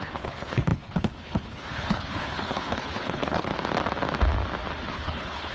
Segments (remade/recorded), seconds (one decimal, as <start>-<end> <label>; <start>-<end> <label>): 0.0-3.5 remade; 3.5-4.9 recorded; 4.9-5.5 remade

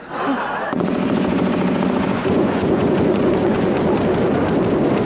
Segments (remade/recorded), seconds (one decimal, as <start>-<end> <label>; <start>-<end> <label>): 0.0-0.7 recorded; 0.7-3.7 remade; 3.7-5.0 recorded